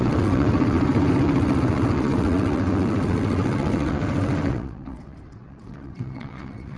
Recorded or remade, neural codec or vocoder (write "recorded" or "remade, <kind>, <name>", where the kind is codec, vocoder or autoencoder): remade, vocoder, WaveNeXt